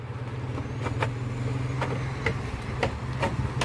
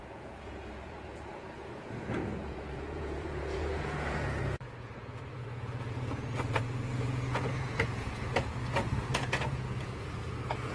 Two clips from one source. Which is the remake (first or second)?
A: second